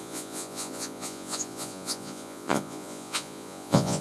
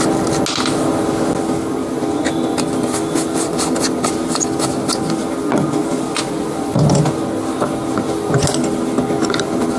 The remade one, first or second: first